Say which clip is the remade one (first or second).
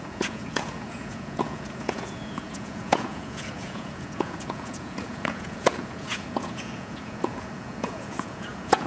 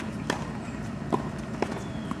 first